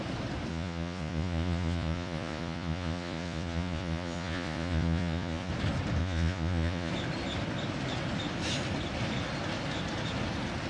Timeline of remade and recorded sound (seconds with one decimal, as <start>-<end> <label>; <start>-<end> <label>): 0.0-0.5 recorded; 0.5-5.5 remade; 5.5-6.0 recorded; 6.0-6.9 remade; 6.9-10.7 recorded